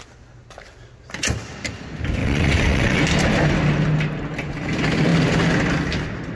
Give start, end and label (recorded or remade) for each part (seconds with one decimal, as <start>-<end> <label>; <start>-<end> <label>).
0.0-2.2 recorded; 2.2-3.0 remade; 3.0-6.3 recorded